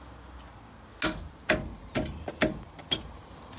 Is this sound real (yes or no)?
yes